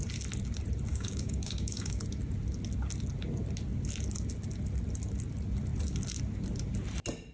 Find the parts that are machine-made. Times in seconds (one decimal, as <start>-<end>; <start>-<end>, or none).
0.9-2.0